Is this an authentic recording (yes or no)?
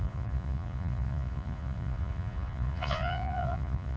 no